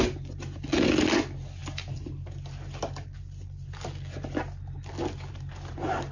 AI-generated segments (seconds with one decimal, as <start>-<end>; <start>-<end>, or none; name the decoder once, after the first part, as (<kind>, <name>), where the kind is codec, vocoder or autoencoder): none